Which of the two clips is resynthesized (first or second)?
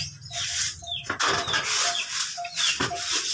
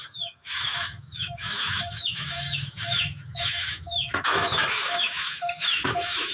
second